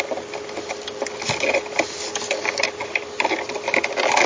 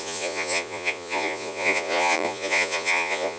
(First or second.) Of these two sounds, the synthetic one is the second